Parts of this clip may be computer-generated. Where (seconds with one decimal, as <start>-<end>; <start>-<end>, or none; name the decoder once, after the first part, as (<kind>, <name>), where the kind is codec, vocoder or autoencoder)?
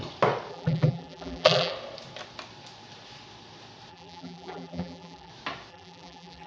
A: 0.5-1.7 (vocoder, BigVGAN v2); 3.9-5.3; 5.7-6.5